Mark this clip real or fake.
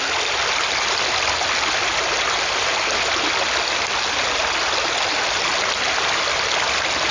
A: real